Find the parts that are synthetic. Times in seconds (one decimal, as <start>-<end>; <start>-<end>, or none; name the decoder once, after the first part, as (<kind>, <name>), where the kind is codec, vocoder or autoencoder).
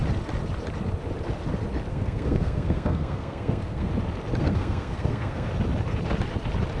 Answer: 1.9-3.9 (codec, SNAC); 4.4-5.5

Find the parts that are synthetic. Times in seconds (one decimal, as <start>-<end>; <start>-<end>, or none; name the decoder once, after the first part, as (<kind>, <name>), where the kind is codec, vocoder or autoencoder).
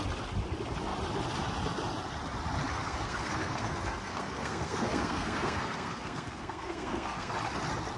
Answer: 2.7-7.3 (codec, SNAC)